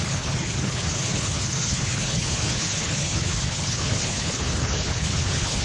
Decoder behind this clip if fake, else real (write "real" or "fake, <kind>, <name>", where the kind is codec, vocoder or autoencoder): fake, codec, HILCodec